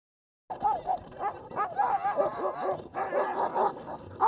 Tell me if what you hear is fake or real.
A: real